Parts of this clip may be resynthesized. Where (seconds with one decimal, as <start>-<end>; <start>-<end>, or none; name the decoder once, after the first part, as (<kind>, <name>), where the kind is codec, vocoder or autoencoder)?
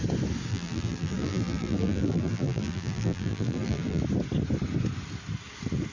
0.5-4.0 (vocoder, BigVGAN v2)